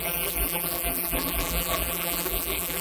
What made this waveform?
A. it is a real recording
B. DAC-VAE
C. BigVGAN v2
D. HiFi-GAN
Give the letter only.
C